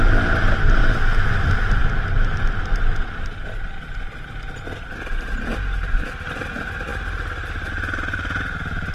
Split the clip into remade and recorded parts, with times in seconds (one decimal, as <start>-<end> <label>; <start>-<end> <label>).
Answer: 0.0-8.9 recorded